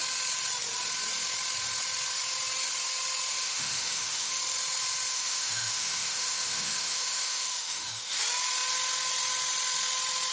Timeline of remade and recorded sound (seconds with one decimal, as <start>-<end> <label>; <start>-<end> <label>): 0.0-3.3 recorded; 3.3-4.4 remade; 4.4-5.1 recorded; 5.1-8.2 remade; 8.2-10.3 recorded